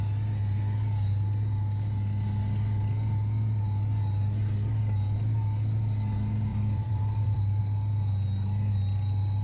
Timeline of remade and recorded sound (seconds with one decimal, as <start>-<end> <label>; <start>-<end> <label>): 0.0-6.5 recorded; 6.5-7.6 remade; 7.6-9.4 recorded